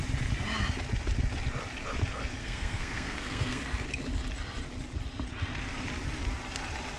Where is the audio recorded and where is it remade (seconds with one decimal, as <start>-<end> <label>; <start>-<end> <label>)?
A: 0.0-2.4 recorded; 2.4-3.6 remade; 3.6-7.0 recorded